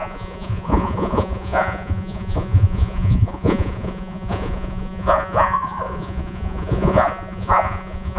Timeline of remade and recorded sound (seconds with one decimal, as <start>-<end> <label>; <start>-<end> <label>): 0.0-8.2 remade